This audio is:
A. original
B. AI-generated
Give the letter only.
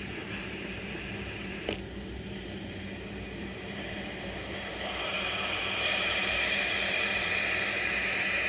B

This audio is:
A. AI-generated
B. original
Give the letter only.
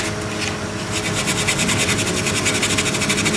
B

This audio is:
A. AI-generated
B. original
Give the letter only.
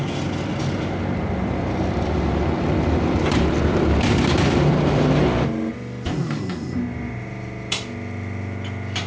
A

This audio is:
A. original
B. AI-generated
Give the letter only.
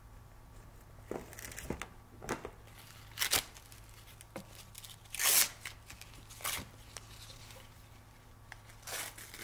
A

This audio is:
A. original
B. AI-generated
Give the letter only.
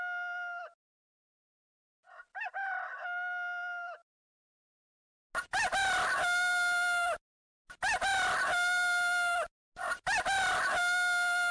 A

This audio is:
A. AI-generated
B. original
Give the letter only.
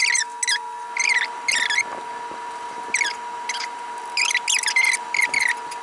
B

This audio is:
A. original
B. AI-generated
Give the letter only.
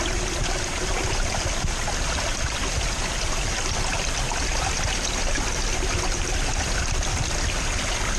A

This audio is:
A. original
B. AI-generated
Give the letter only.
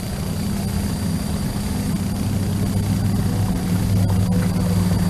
A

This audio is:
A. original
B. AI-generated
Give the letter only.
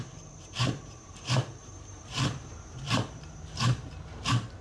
B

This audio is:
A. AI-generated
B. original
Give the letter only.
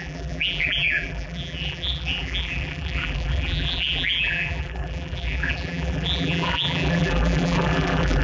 A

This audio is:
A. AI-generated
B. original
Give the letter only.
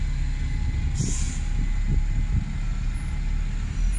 B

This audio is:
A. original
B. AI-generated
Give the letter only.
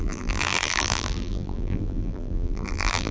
B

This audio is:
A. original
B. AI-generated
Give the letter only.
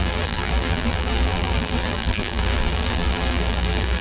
B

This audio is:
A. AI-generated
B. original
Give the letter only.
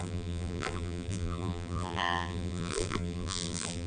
A